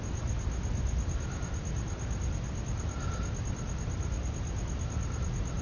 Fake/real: real